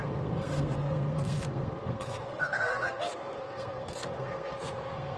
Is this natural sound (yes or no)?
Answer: no